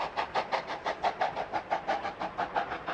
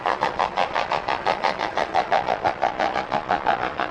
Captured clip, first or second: first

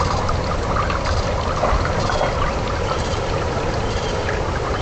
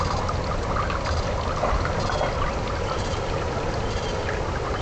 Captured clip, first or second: second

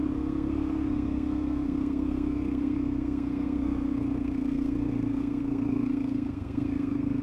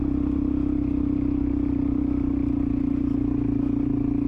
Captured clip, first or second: second